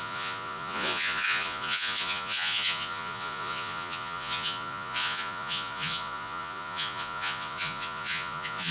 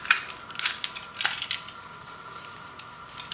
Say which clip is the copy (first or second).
first